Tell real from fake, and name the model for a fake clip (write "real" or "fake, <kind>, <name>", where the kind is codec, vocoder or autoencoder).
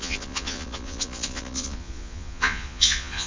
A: fake, vocoder, Vocos